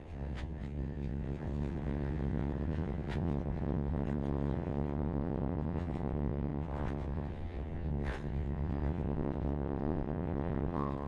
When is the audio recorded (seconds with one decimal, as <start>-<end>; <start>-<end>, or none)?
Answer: none